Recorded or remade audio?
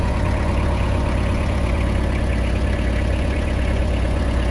remade